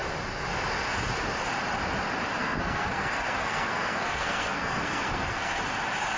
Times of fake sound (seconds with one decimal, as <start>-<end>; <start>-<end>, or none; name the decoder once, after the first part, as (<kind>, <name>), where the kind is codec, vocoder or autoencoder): 2.4-5.6 (codec, SNAC)

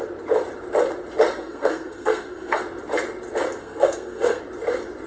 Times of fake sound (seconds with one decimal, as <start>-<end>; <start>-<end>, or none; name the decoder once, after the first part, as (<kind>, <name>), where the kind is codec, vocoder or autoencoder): 1.4-2.6 (codec, SNAC); 3.6-4.4